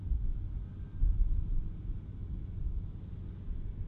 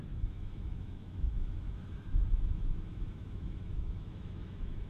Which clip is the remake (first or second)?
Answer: second